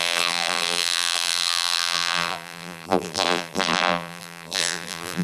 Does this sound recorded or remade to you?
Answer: remade